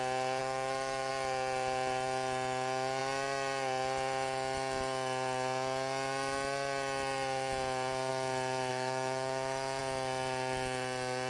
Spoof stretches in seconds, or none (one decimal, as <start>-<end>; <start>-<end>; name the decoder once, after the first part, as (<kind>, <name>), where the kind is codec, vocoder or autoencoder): 0.4-1.1 (autoencoder, DAC-VAE); 8.7-9.8